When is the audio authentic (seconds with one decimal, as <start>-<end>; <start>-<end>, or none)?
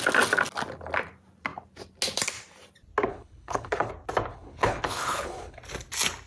0.0-3.1; 3.9-4.3; 5.6-6.3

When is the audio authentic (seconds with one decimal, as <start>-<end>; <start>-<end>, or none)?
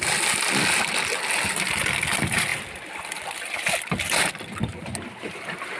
0.0-5.8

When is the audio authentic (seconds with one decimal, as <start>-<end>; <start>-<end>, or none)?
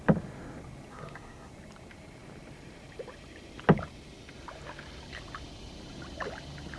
0.0-0.9; 1.5-6.8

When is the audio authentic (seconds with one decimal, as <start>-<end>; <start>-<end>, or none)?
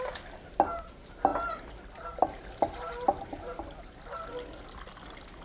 0.0-5.4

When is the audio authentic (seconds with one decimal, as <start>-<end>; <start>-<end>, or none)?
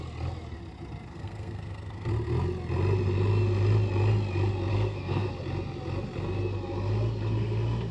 0.0-1.1; 2.1-4.7; 5.3-7.9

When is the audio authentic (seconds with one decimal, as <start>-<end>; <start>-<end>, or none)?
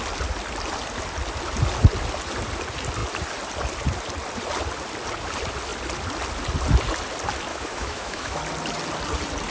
0.0-7.5; 8.4-9.5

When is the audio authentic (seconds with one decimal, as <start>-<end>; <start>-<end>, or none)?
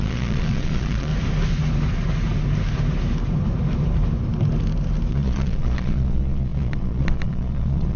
1.1-5.1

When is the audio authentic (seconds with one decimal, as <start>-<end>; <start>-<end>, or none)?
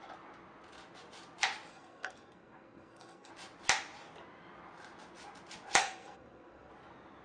0.0-1.7; 3.3-5.8; 6.7-7.2